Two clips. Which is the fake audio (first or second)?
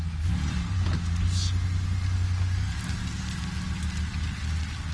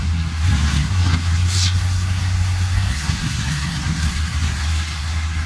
second